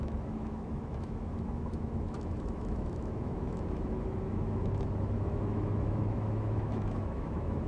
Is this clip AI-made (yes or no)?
yes